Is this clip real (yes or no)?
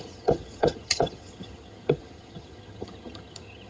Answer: no